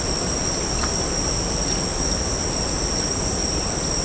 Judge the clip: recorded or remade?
recorded